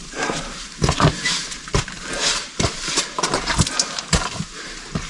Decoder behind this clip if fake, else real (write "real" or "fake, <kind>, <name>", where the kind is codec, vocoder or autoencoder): fake, vocoder, BigVGAN v2